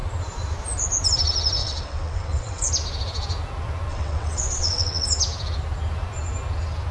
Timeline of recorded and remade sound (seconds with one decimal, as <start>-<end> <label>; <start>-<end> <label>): 0.0-1.6 recorded; 1.6-2.7 remade; 2.7-3.9 recorded; 3.9-5.0 remade; 5.0-6.9 recorded